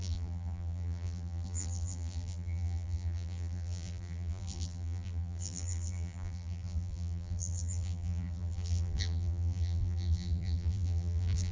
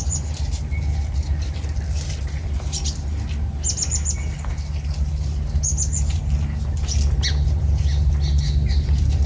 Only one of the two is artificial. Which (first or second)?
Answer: first